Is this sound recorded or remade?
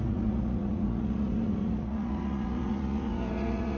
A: remade